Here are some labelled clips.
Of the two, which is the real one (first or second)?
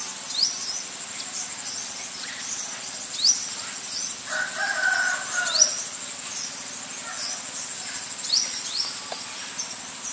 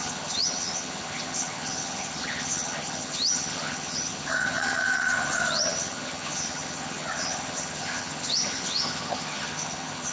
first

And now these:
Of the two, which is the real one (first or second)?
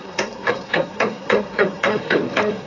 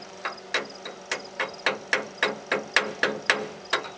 second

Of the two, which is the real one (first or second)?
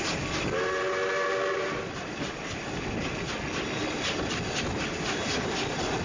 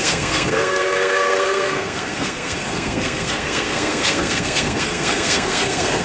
first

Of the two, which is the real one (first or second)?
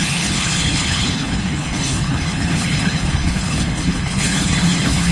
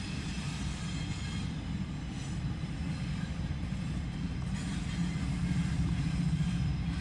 second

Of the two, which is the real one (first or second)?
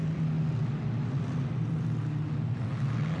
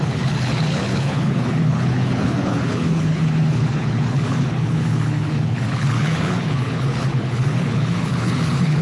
first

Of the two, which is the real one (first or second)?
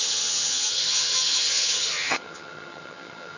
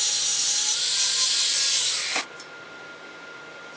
second